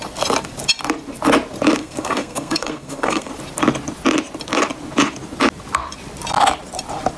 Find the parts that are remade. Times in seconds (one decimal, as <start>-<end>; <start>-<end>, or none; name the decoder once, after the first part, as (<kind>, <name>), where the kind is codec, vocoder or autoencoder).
1.8-3.3 (codec, SNAC)